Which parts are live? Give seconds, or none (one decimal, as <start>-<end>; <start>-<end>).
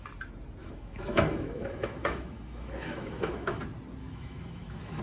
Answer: 0.0-0.6; 3.6-4.0